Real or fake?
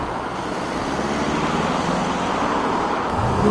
real